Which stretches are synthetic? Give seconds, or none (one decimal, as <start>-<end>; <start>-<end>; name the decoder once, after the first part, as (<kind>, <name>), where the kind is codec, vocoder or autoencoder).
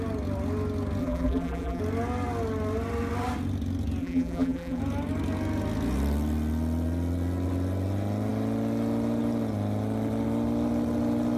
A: 1.0-1.8 (vocoder, BigVGAN v2); 4.0-4.8